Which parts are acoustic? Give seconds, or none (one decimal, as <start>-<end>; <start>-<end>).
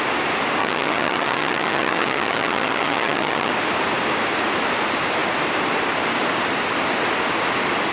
0.0-0.6; 3.5-7.9